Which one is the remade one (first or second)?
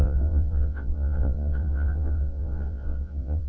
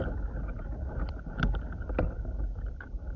first